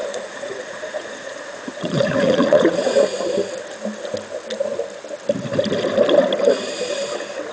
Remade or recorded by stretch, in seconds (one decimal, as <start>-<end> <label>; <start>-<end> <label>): 0.0-3.0 remade; 3.0-7.5 recorded